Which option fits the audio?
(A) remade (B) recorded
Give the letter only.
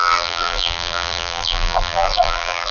A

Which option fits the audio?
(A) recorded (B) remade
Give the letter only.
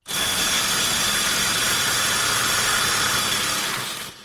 B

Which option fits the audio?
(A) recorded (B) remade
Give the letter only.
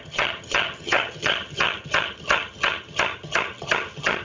B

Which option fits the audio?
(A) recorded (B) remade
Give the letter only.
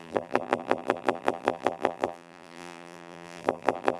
B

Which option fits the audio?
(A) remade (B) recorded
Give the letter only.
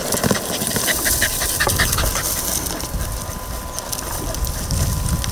B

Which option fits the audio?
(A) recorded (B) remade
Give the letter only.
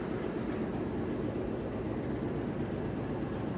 A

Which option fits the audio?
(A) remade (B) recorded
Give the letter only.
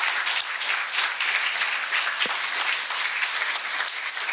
B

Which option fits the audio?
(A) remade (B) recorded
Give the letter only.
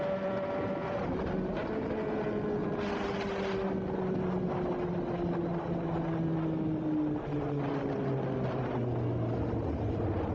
B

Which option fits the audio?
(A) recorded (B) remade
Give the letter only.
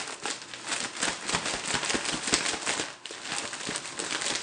A